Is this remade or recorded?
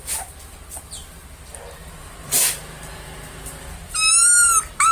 recorded